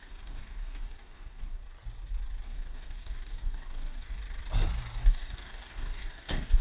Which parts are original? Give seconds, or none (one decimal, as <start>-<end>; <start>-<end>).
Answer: 1.6-2.4; 4.2-5.0